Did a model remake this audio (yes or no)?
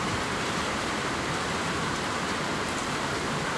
yes